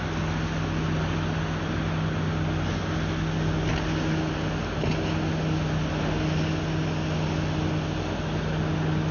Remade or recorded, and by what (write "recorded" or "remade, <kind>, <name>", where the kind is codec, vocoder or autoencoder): recorded